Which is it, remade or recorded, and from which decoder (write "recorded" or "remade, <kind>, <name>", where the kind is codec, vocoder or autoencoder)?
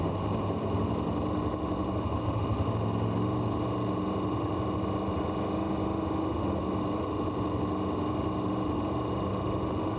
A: recorded